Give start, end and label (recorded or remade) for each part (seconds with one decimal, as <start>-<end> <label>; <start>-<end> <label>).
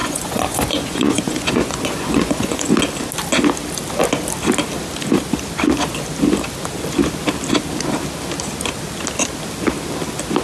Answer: 0.0-2.7 remade; 2.7-10.4 recorded